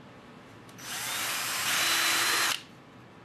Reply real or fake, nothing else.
real